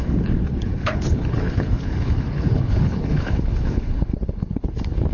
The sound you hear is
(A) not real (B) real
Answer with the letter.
A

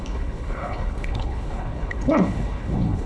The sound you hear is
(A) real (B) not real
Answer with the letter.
B